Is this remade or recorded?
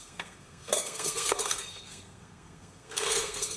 remade